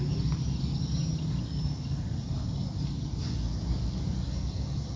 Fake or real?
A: real